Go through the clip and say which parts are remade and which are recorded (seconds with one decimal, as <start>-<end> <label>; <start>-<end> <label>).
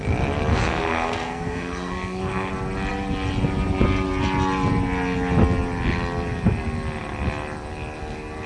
0.0-0.5 recorded; 0.5-2.5 remade; 2.5-8.5 recorded